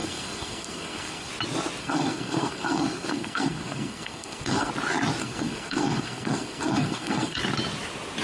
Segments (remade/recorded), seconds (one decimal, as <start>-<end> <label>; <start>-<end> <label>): 0.0-1.3 remade; 1.3-1.8 recorded; 1.8-4.7 remade; 4.7-5.2 recorded; 5.2-7.4 remade; 7.4-8.2 recorded